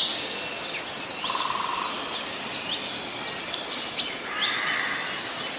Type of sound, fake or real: real